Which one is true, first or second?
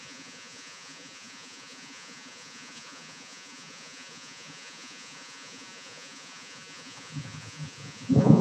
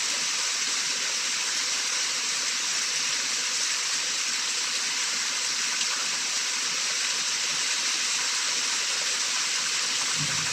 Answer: second